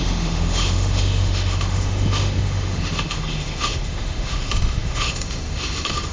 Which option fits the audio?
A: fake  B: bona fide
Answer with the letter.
A